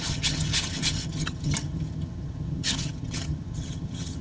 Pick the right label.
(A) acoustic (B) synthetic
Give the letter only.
B